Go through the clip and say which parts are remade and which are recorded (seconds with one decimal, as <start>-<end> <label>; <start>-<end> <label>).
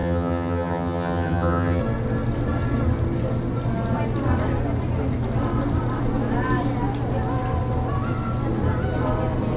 0.0-1.8 remade; 1.8-9.6 recorded